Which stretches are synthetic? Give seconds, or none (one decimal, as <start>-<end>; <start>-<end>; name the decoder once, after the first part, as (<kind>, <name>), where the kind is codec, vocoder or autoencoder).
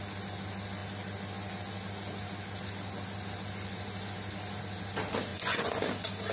5.3-5.8 (vocoder, Vocos)